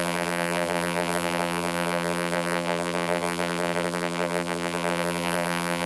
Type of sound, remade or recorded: remade